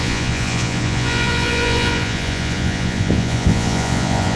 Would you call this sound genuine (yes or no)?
no